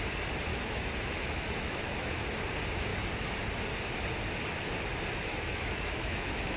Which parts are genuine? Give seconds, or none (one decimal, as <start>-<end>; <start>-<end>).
0.0-0.5; 2.1-5.3

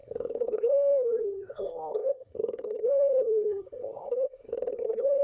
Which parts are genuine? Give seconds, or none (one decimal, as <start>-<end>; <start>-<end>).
none

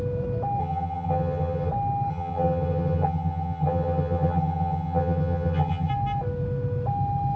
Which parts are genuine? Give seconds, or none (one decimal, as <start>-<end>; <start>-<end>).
0.0-0.6; 1.7-2.1; 5.9-7.4

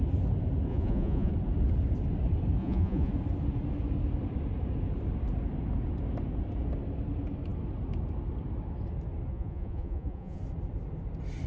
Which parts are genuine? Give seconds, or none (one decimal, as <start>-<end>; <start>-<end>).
0.0-0.7; 1.3-2.6; 3.1-9.3; 10.4-11.5